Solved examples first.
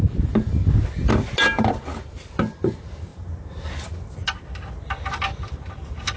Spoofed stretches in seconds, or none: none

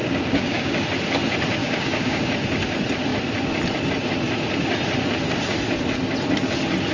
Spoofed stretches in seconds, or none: 0.0-0.8 (codec, DAC); 1.6-2.3

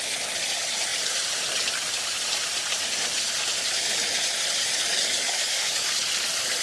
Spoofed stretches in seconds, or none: 4.6-6.0 (codec, DAC)

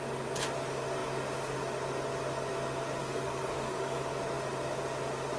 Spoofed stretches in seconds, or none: 3.0-4.2 (codec, DAC)